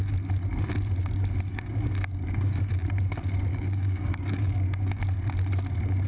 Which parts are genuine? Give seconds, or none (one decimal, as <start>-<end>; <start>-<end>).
0.0-1.5; 2.7-3.5; 5.0-6.1